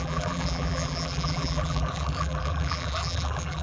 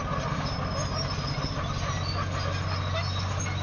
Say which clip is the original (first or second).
second